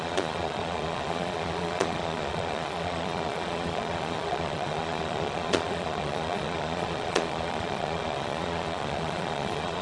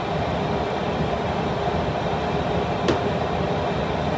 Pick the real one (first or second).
second